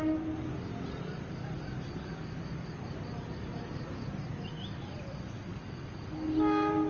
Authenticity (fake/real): real